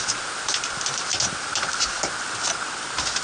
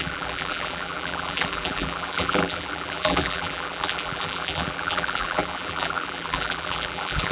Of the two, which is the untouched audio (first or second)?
first